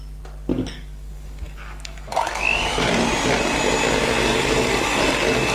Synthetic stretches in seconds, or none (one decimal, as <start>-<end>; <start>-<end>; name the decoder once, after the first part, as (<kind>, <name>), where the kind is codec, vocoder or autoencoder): 0.5-2.9 (codec, DAC); 4.3-4.9